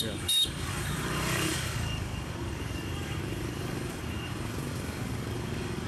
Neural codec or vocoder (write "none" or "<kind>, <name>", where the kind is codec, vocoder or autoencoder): codec, DAC